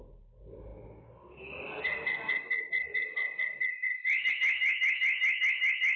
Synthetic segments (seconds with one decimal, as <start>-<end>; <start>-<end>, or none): none

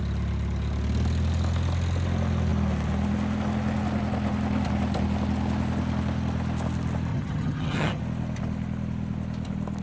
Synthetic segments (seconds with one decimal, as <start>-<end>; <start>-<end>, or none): 7.1-8.0

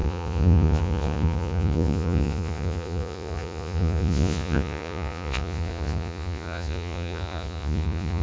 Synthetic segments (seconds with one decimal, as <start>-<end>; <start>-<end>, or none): 0.0-8.2

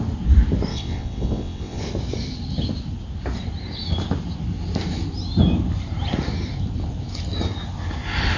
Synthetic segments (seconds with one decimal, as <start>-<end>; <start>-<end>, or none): 0.7-1.8

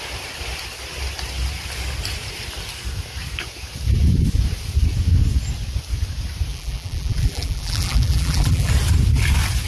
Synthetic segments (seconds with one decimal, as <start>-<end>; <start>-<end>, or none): 6.5-8.7

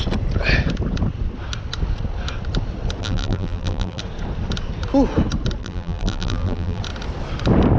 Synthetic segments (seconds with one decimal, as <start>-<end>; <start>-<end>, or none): 3.0-4.0; 5.6-6.8